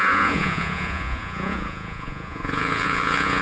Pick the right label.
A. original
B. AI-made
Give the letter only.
B